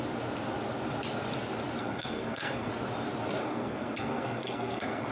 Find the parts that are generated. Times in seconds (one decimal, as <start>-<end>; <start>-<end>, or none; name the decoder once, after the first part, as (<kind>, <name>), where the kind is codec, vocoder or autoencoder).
1.8-2.7 (codec, SNAC); 3.4-5.1